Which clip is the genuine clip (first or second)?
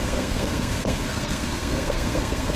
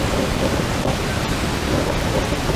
second